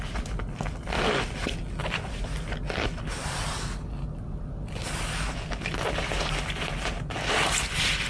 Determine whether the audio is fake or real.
real